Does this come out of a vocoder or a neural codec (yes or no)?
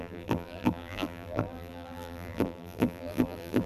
yes